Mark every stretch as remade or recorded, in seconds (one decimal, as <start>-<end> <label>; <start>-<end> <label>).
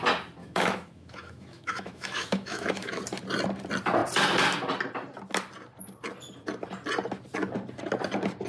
0.0-0.4 recorded; 0.4-3.0 remade; 3.0-8.5 recorded